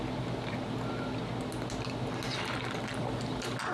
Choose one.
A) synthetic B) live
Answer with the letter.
B